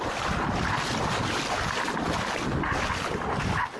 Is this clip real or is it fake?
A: real